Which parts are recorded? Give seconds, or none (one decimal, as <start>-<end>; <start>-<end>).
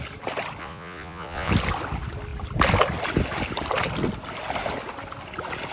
0.0-0.6; 1.5-5.7